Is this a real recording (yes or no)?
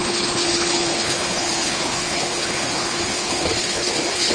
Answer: no